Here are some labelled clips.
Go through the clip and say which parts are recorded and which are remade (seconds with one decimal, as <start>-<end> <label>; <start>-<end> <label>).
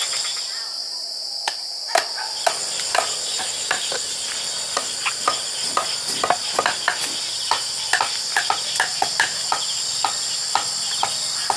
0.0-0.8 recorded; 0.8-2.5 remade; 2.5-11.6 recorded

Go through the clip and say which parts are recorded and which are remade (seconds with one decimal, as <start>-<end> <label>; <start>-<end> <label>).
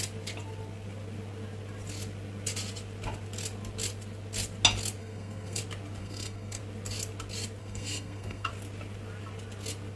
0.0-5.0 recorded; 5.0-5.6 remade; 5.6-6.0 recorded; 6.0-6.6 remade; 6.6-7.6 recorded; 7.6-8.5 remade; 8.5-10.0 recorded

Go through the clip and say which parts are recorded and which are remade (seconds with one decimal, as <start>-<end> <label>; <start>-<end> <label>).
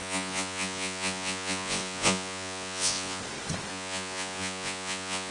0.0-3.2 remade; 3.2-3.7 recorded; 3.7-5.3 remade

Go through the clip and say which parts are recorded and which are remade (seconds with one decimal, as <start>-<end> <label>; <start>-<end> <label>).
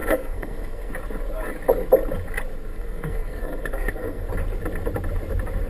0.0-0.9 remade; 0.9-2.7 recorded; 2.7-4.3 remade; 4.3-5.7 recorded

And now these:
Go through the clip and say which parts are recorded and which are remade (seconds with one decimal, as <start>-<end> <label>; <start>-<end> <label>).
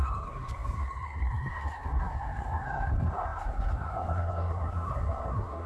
0.0-5.7 remade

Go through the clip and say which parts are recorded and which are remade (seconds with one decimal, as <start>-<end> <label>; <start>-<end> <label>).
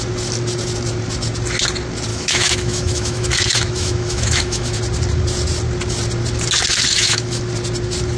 0.0-2.1 recorded; 2.1-4.8 remade; 4.8-6.9 recorded; 6.9-7.4 remade; 7.4-8.2 recorded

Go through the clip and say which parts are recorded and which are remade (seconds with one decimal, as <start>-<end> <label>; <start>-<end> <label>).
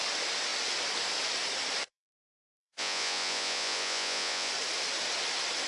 0.0-1.9 recorded; 1.9-4.5 remade; 4.5-5.7 recorded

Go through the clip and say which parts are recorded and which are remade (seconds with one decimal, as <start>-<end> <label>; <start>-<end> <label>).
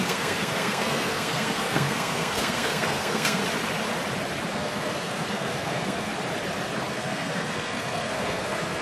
0.0-3.4 remade; 3.4-4.5 recorded; 4.5-6.1 remade; 6.1-6.9 recorded; 6.9-8.8 remade